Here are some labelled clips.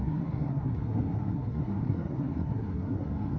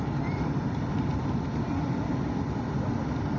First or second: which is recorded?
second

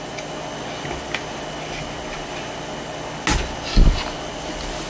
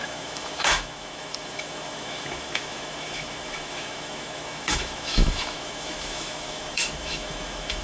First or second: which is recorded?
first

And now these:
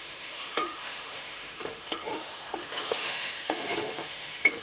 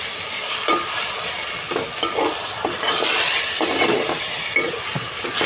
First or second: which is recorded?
second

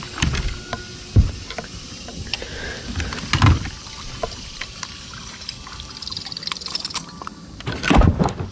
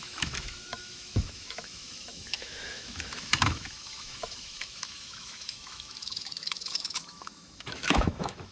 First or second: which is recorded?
first